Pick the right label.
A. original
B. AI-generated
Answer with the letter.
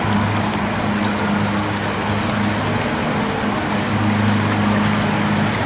A